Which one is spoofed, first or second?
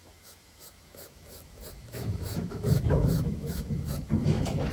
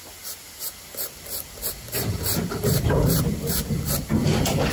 first